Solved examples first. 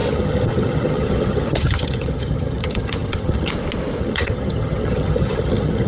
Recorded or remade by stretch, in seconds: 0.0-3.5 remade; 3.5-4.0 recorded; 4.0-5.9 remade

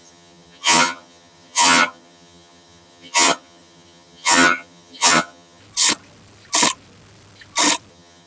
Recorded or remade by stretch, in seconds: 0.0-5.6 remade; 5.6-7.9 recorded; 7.9-8.3 remade

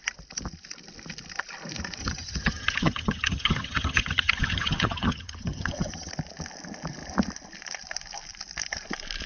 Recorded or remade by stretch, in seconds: 0.0-2.0 recorded; 2.0-6.1 remade; 6.1-9.3 recorded

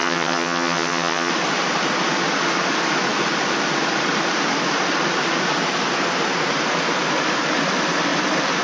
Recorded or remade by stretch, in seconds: 0.0-1.3 remade; 1.3-8.6 recorded

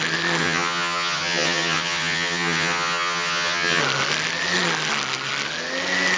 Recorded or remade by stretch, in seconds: 0.0-0.4 recorded; 0.4-3.8 remade; 3.8-6.2 recorded